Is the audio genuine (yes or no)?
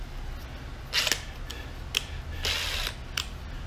yes